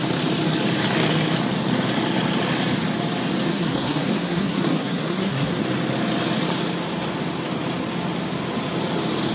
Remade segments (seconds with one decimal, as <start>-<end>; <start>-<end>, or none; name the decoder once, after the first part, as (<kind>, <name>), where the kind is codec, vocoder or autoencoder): 3.5-5.6 (codec, SNAC)